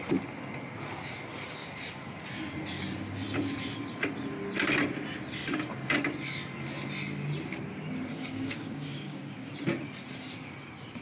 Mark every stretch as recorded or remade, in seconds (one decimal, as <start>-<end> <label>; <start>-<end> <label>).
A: 0.0-1.6 recorded; 1.6-2.2 remade; 2.2-8.1 recorded; 8.1-9.5 remade; 9.5-11.0 recorded